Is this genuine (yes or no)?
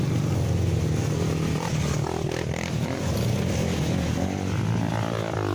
yes